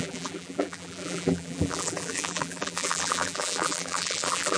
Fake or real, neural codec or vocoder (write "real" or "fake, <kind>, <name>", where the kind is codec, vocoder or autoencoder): fake, vocoder, BigVGAN v2